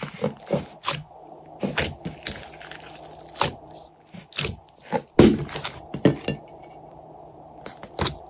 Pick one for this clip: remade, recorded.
recorded